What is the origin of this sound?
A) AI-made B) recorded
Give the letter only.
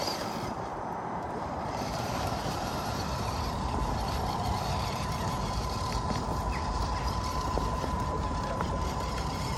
A